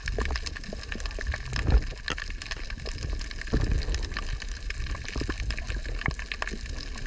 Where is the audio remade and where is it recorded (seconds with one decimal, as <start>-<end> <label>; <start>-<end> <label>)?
0.0-7.1 recorded